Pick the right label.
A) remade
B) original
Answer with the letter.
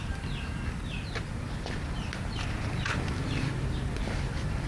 B